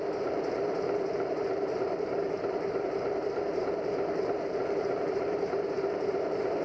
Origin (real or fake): fake